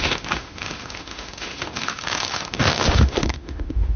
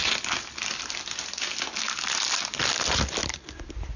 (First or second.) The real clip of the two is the second